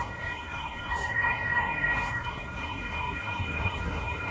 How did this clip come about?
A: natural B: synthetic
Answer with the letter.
B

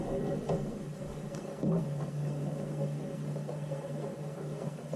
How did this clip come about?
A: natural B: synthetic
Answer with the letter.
B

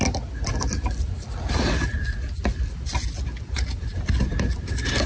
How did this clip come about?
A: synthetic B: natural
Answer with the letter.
B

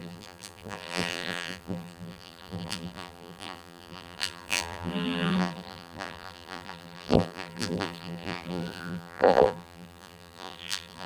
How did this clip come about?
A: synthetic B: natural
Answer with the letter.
A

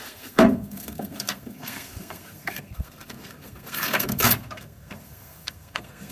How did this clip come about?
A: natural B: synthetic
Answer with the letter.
B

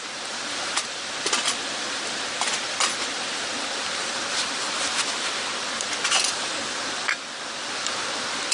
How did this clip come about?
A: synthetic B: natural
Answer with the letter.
A